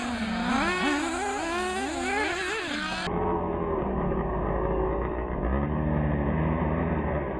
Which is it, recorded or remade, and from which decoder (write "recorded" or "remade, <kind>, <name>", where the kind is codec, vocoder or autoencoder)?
recorded